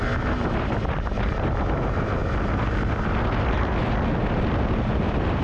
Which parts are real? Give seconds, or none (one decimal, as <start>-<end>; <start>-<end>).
0.0-5.4